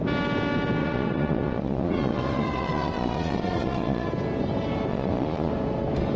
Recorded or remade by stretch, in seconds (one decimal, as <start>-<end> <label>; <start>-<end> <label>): 0.0-0.8 recorded; 0.8-4.1 remade; 4.1-4.9 recorded; 4.9-5.5 remade; 5.5-6.2 recorded